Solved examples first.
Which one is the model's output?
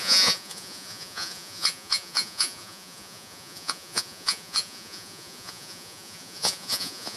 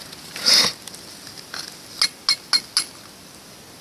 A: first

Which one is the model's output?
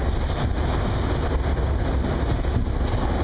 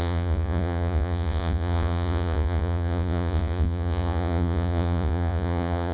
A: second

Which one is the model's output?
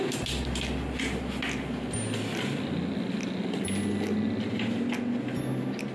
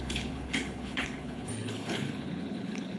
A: second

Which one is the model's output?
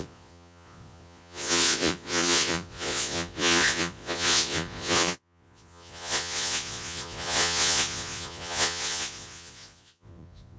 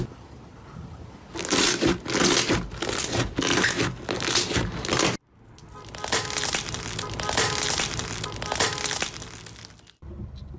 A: first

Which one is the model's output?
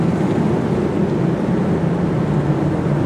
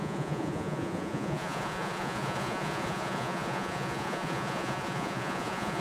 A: second